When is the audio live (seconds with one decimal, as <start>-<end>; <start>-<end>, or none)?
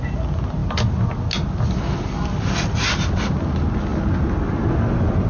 0.0-5.3